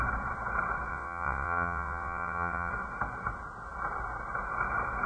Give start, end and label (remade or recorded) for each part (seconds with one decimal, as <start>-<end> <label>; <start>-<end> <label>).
0.0-0.9 recorded; 0.9-2.7 remade; 2.7-5.1 recorded